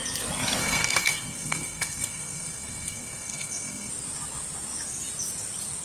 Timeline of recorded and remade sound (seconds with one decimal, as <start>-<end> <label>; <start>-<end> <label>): 0.0-0.6 recorded; 0.6-3.9 remade; 3.9-5.8 recorded